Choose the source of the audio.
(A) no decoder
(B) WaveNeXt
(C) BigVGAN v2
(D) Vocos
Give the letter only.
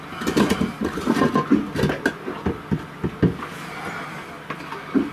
A